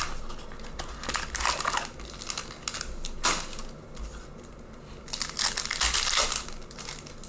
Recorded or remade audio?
recorded